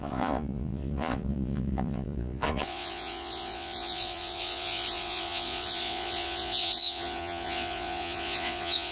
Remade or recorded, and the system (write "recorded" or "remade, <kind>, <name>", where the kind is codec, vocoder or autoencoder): remade, vocoder, Vocos